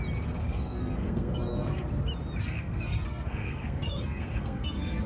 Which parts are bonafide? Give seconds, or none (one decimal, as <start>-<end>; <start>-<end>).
0.0-0.4; 1.8-2.4